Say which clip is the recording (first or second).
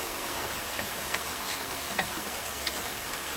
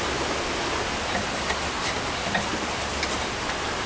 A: second